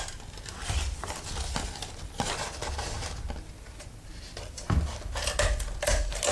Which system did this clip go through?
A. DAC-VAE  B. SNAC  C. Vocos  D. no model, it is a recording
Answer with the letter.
D